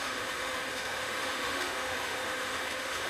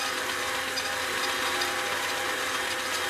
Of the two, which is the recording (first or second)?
second